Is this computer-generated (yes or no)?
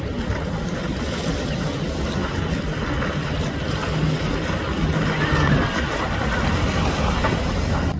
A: no